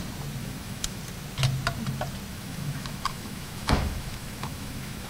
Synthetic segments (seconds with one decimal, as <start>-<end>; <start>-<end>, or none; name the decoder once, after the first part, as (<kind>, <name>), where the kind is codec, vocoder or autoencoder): 0.4-1.0 (autoencoder, DAC-VAE); 2.3-5.1